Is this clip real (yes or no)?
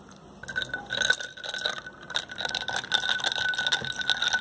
yes